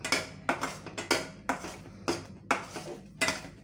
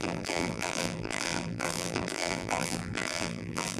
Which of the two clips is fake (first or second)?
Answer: second